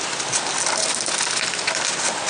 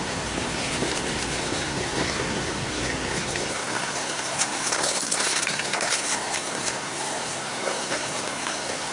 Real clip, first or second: first